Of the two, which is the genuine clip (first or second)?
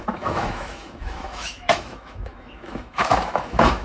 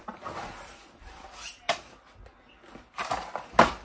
second